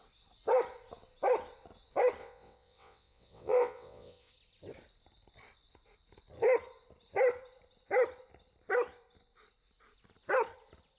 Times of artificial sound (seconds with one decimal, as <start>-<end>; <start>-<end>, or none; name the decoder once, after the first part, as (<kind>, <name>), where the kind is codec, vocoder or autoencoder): 2.2-4.3 (vocoder, WaveNeXt)